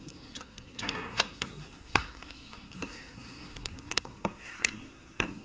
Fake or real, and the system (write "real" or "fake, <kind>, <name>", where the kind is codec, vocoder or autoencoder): fake, codec, SNAC